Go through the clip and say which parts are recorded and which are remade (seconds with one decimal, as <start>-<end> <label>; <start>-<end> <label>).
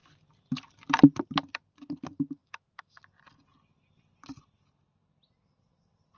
0.0-2.4 recorded; 2.4-3.0 remade; 3.0-6.2 recorded